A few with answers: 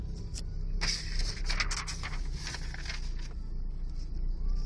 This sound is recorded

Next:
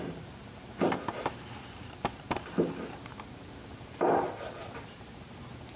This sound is remade